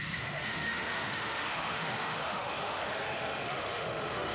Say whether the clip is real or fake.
fake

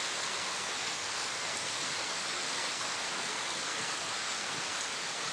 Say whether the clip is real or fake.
fake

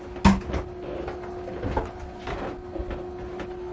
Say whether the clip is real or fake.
real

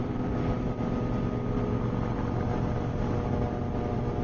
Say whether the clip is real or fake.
real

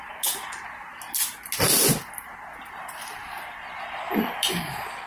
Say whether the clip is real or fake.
real